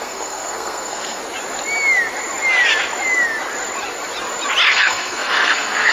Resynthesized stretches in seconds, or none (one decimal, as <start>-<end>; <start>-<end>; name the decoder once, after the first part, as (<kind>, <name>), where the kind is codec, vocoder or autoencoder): 0.0-1.2 (codec, SNAC); 4.7-5.9